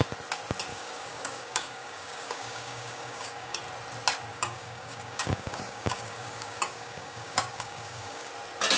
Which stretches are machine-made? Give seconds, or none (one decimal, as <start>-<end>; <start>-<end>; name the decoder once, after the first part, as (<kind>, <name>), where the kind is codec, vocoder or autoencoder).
0.7-3.6 (codec, DAC); 4.3-8.3